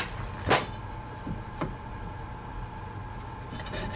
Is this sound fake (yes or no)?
no